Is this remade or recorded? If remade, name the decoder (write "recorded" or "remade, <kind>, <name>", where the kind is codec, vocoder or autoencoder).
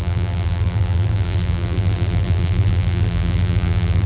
remade, vocoder, BigVGAN v2